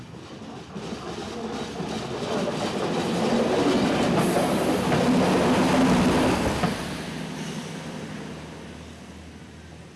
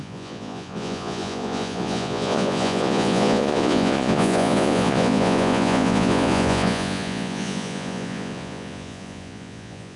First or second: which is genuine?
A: first